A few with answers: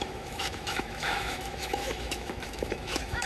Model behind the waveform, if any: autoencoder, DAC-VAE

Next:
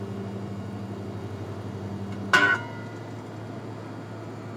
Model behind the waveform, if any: none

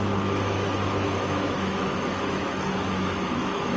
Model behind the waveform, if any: autoencoder, DAC-VAE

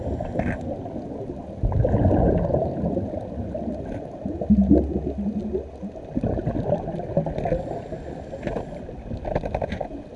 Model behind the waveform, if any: none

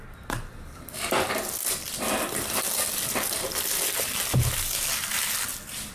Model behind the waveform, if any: none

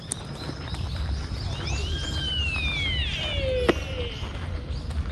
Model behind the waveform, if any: none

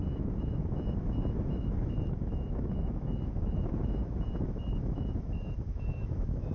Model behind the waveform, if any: autoencoder, DAC-VAE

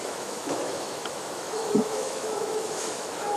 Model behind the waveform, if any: autoencoder, DAC-VAE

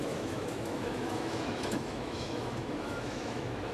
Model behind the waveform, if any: autoencoder, DAC-VAE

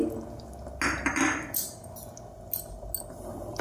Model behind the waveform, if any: none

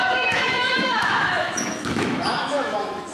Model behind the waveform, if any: autoencoder, DAC-VAE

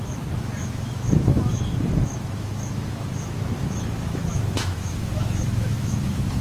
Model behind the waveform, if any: autoencoder, DAC-VAE